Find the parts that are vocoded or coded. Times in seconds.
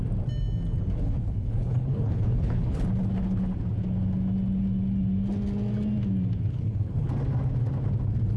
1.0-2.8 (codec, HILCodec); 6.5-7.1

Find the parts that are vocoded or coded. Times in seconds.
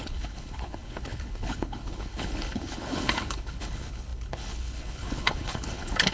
0.0-6.1 (codec, HILCodec)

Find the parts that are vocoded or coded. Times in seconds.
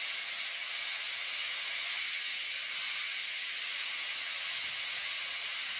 none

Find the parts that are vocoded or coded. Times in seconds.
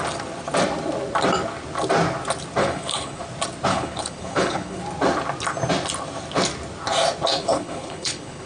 2.6-3.2 (codec, HILCodec); 3.7-4.8; 7.4-8.5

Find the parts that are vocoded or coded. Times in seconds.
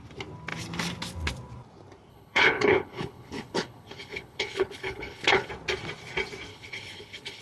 2.1-5.5 (codec, HILCodec); 6.5-7.4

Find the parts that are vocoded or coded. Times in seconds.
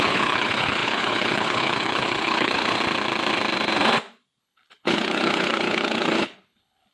0.0-2.6 (codec, HILCodec); 4.4-6.9